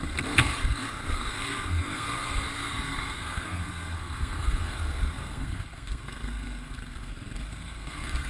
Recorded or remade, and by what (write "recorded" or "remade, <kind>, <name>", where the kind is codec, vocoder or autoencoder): remade, codec, SNAC